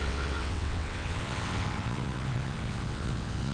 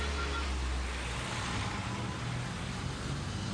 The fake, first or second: first